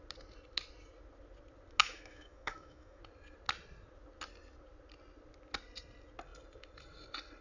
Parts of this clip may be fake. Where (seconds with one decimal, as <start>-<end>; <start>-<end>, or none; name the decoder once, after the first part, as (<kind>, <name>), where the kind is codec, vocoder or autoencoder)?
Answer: 1.8-3.0 (autoencoder, DAC-VAE)